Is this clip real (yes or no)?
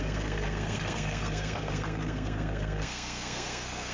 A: no